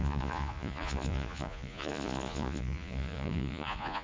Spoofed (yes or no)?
yes